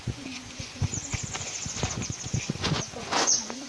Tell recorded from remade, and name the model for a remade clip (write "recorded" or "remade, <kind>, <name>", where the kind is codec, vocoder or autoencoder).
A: remade, vocoder, Vocos